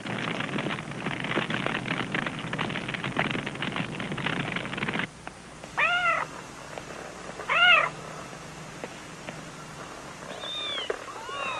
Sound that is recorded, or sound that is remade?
recorded